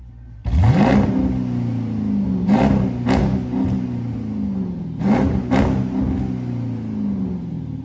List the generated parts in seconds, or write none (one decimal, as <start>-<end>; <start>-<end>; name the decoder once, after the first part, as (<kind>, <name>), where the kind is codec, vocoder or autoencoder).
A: none